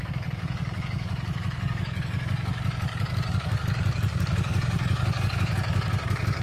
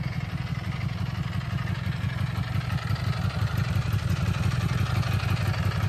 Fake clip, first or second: first